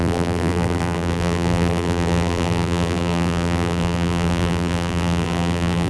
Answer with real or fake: fake